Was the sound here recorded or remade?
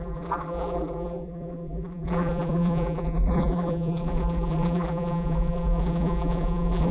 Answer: remade